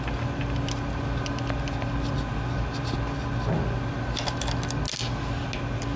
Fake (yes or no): no